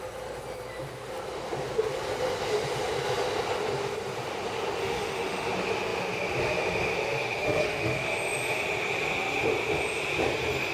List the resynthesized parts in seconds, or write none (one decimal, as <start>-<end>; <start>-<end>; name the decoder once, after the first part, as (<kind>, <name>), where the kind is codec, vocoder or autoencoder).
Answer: 4.8-5.5 (autoencoder, DAC-VAE); 7.4-8.1